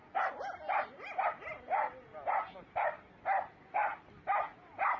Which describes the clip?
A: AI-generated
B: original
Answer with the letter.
B